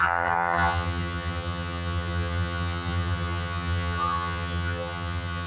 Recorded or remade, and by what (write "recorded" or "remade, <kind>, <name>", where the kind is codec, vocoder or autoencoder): remade, vocoder, HiFi-GAN